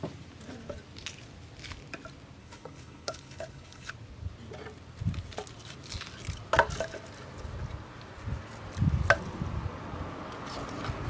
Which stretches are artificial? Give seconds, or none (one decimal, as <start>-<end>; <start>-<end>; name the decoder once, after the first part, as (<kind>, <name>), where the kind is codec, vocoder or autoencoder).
2.4-3.9 (codec, HILCodec)